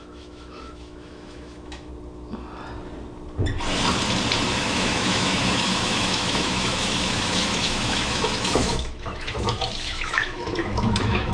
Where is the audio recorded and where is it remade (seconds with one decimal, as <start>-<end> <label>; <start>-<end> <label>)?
0.0-1.9 remade; 1.9-4.6 recorded; 4.6-11.3 remade